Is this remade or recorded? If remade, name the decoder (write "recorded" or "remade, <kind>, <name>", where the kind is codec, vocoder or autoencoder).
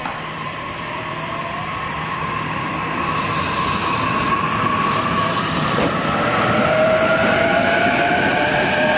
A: remade, vocoder, BigVGAN v2